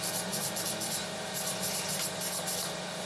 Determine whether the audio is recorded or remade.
recorded